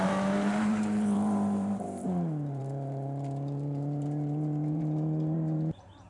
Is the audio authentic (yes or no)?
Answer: no